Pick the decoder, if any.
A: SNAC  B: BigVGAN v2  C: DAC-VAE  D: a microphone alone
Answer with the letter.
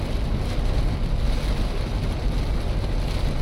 D